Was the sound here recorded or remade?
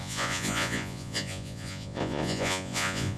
remade